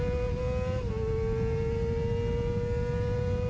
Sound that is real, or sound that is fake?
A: real